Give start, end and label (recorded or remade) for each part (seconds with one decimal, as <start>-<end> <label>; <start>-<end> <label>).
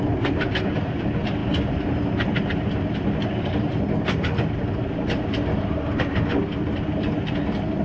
0.0-7.8 recorded